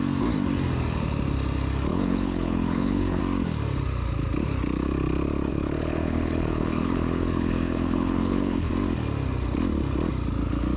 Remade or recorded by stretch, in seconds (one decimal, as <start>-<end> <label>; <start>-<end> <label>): 0.0-1.9 recorded; 1.9-3.2 remade; 3.2-5.5 recorded; 5.5-8.7 remade; 8.7-10.8 recorded